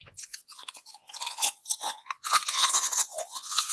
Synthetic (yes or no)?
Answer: yes